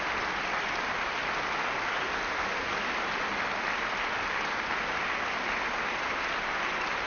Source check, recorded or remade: recorded